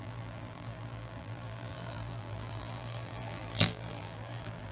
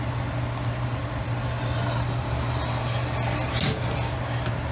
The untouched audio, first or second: second